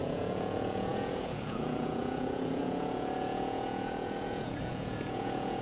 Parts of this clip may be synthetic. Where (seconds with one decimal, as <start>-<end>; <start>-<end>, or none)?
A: 0.0-5.6